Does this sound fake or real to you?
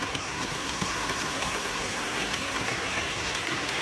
fake